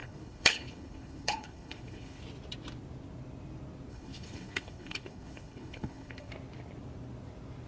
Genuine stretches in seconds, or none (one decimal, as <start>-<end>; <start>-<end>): 2.2-3.9; 6.3-7.7